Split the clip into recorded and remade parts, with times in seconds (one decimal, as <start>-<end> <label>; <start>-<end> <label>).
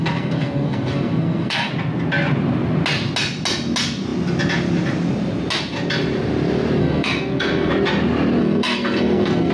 0.0-1.7 remade; 1.7-6.8 recorded; 6.8-7.7 remade; 7.7-8.4 recorded; 8.4-9.5 remade